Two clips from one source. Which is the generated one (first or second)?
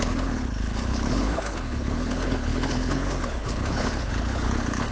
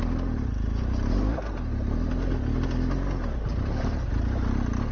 first